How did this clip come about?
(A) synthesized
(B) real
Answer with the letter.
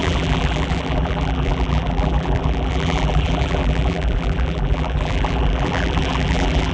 A